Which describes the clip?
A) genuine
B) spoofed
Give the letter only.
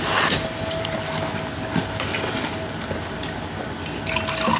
A